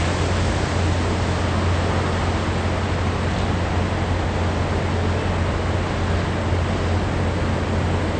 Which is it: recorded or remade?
recorded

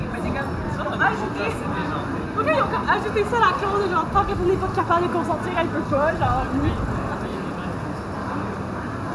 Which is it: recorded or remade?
recorded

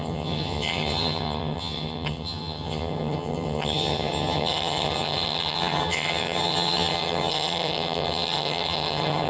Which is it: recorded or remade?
remade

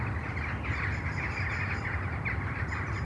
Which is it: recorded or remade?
recorded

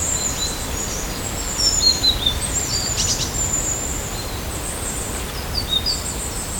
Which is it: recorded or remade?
remade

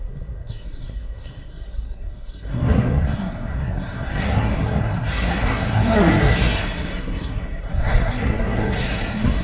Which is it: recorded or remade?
remade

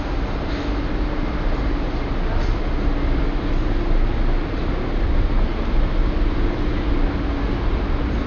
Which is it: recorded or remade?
recorded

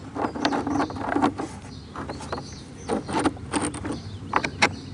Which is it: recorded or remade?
recorded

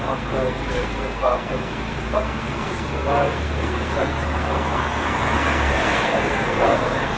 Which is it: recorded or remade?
remade